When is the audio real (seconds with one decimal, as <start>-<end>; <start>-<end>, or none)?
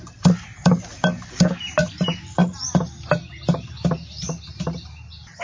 0.0-5.4